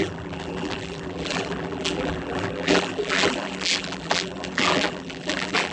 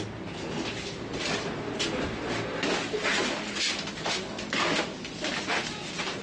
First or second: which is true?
second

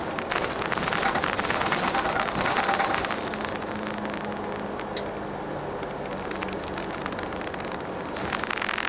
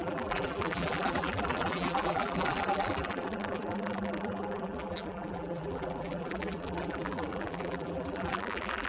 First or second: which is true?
first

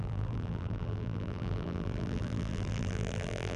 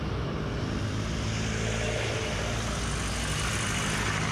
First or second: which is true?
second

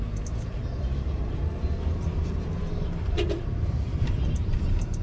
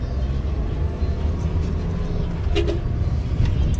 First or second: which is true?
second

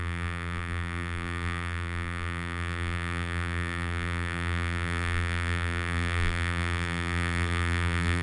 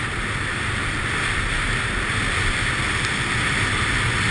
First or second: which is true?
second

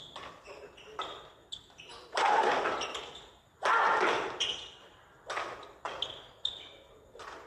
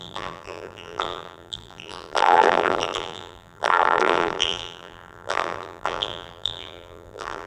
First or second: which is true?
first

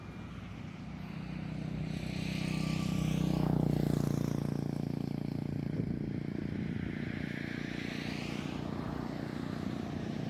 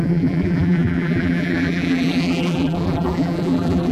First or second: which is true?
first